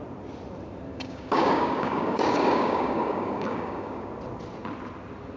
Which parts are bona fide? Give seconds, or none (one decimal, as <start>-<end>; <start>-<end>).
0.0-0.9; 4.1-5.4